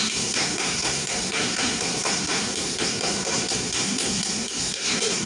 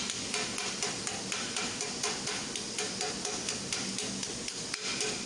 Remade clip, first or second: first